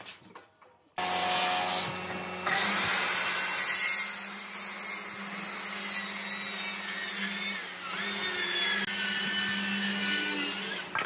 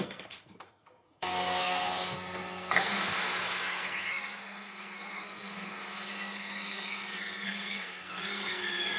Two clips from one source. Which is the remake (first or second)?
second